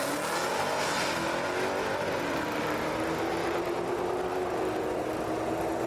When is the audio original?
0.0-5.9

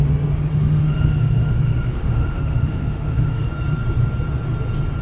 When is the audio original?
0.0-0.5; 3.5-5.0

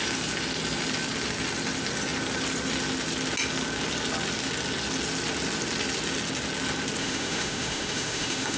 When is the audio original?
0.0-7.0

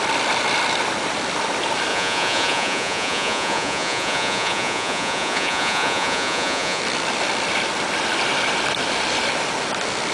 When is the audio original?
0.0-1.9; 6.8-10.1

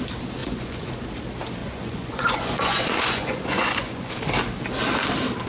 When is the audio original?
0.0-0.4; 0.9-1.6; 4.1-5.5

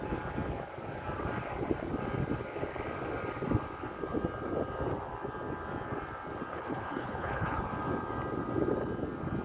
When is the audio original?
0.0-6.5; 7.6-9.4

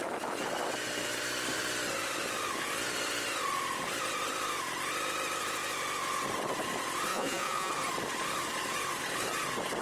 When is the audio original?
0.0-7.1; 7.7-9.8